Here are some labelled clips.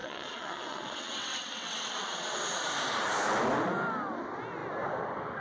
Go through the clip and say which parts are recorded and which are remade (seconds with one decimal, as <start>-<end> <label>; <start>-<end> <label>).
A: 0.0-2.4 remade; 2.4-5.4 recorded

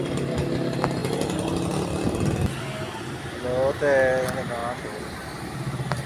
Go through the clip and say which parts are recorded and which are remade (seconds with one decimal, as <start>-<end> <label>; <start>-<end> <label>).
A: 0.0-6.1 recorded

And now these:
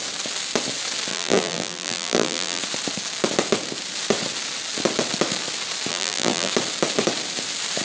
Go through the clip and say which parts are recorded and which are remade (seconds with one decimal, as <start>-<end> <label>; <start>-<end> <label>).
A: 0.0-1.1 recorded; 1.1-2.6 remade; 2.6-5.9 recorded; 5.9-6.5 remade; 6.5-7.8 recorded

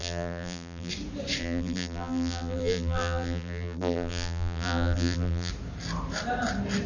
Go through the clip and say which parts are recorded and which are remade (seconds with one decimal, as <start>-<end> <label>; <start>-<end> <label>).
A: 0.0-0.9 remade; 0.9-1.4 recorded; 1.4-5.5 remade; 5.5-6.9 recorded

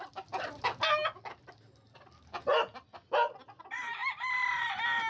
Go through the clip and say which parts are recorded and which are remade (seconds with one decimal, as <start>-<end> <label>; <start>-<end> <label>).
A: 0.0-5.1 recorded